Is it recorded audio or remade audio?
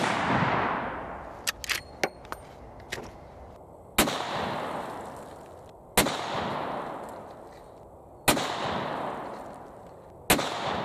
recorded